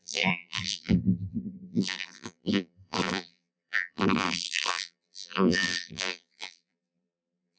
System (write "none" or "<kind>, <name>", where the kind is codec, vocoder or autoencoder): vocoder, BigVGAN v2